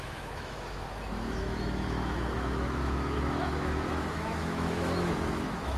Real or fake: fake